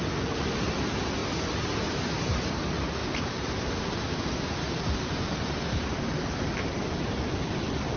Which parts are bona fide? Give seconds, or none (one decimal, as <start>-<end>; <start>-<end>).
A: 0.0-3.0; 7.4-8.0